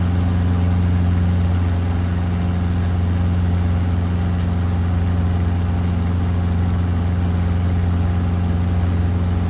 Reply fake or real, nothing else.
real